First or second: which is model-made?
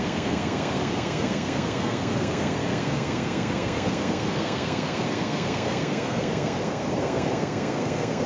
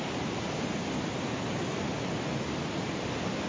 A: first